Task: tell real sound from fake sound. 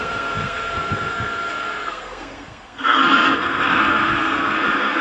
fake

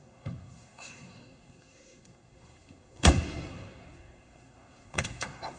fake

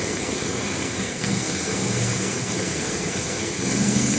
fake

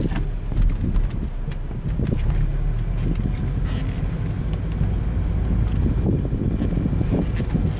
real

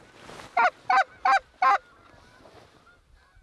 real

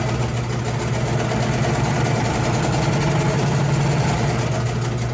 real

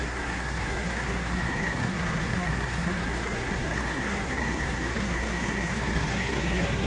fake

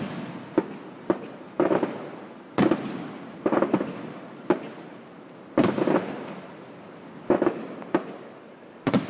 real